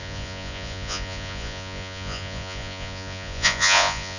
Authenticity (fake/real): fake